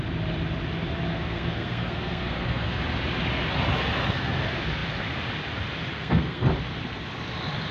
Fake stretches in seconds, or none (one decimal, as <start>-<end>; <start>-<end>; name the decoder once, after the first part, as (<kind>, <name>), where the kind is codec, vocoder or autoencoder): 1.1-2.8 (codec, SNAC); 5.9-6.5